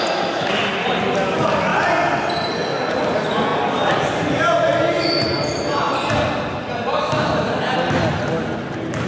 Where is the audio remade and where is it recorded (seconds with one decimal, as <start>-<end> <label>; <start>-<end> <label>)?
0.0-9.1 recorded